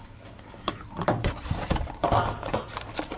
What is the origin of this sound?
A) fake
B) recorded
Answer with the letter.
A